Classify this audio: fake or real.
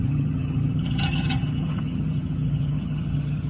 fake